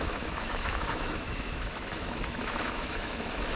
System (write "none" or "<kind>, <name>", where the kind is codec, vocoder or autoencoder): autoencoder, DAC-VAE